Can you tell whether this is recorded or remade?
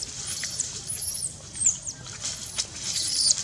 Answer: recorded